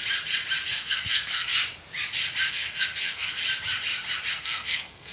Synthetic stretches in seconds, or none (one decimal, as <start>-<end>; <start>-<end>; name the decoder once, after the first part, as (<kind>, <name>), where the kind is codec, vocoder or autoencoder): 0.7-1.5 (codec, SNAC); 2.5-3.4; 4.3-5.1